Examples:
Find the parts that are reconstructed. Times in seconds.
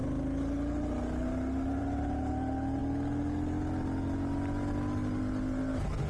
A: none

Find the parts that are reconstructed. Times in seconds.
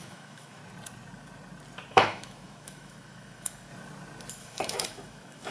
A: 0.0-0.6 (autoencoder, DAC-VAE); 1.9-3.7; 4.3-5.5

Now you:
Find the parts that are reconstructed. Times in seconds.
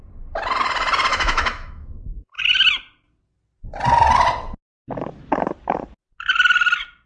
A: 1.1-2.4 (autoencoder, DAC-VAE)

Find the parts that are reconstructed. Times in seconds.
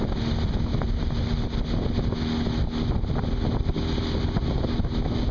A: none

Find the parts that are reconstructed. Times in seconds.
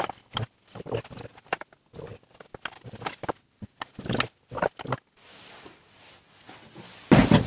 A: none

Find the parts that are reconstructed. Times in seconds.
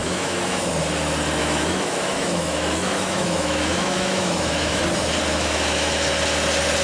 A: 0.0-0.7 (autoencoder, DAC-VAE); 1.4-4.8; 5.3-5.9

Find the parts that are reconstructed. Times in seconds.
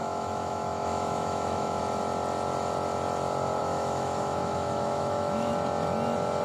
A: 0.0-1.8 (autoencoder, DAC-VAE); 3.6-5.5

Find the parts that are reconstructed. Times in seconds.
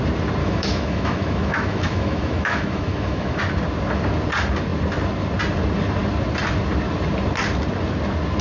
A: 0.4-3.4 (autoencoder, DAC-VAE)